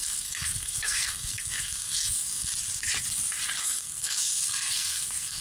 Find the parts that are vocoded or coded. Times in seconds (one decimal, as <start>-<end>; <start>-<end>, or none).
0.0-2.5; 3.6-5.4